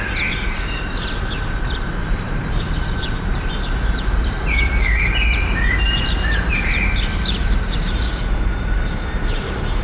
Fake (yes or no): yes